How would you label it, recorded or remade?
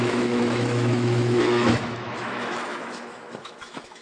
remade